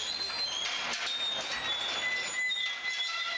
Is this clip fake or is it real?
real